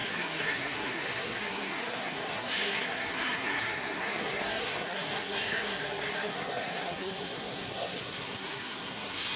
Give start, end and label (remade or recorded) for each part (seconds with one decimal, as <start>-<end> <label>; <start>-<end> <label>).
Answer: 0.0-9.4 remade

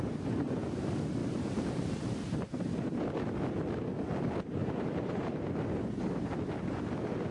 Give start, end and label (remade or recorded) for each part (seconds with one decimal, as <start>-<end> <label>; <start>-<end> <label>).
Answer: 0.0-1.2 recorded; 1.2-3.0 remade; 3.0-4.6 recorded; 4.6-6.3 remade; 6.3-7.3 recorded

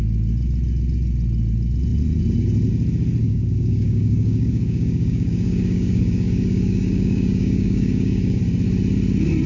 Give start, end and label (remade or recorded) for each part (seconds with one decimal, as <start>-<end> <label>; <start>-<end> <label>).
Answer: 0.0-3.2 recorded; 3.2-8.4 remade; 8.4-9.5 recorded

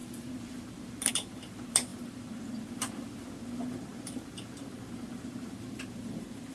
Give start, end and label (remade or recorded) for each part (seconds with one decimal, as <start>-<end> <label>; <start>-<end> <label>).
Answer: 0.0-6.5 remade

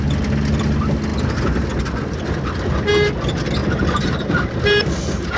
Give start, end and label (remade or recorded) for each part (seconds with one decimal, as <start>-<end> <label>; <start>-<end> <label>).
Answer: 0.0-3.6 recorded; 3.6-5.4 remade

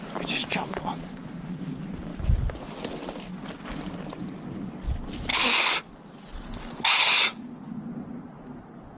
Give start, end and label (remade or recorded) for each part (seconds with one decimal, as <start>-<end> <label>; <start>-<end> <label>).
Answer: 0.0-0.4 recorded; 0.4-1.6 remade; 1.6-9.0 recorded